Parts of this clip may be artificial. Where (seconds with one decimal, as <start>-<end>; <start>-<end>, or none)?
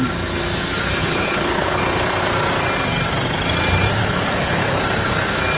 1.0-1.8; 4.0-4.8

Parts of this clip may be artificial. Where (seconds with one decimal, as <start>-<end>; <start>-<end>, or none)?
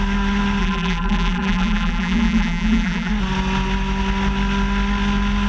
0.6-3.1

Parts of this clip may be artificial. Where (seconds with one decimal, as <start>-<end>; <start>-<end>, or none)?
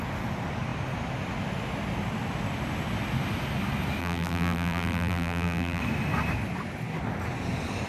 4.0-5.8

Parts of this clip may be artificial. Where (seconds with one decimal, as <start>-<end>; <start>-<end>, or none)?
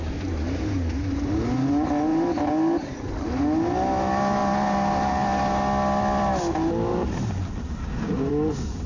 6.9-8.3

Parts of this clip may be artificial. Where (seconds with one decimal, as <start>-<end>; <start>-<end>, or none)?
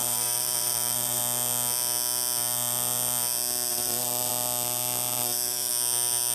0.0-1.2; 3.7-4.3; 5.2-5.7